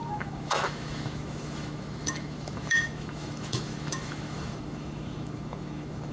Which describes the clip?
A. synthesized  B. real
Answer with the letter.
A